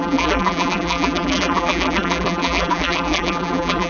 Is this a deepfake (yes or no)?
yes